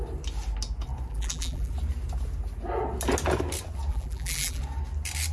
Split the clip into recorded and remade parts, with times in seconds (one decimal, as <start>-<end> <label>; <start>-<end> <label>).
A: 0.0-1.1 recorded; 1.1-1.7 remade; 1.7-3.9 recorded; 3.9-4.6 remade; 4.6-5.3 recorded